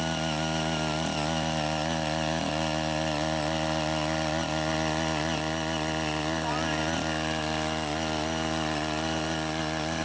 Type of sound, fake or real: real